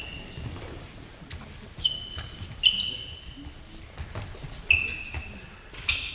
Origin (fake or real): real